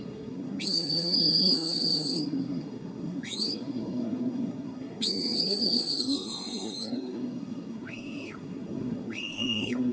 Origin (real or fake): fake